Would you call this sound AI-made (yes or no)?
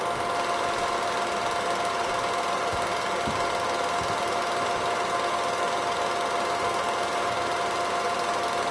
no